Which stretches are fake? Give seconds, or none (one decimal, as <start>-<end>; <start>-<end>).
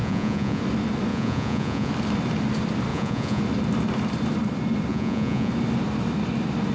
0.0-0.6; 1.1-1.9; 2.9-3.4; 4.9-5.5